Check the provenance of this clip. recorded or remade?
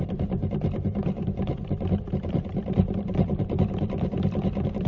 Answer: remade